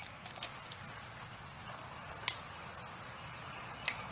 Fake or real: real